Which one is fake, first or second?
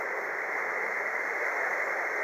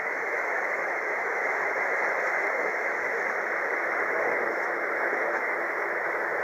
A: second